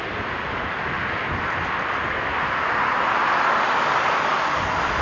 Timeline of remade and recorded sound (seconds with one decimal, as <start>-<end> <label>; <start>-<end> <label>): 0.0-5.0 recorded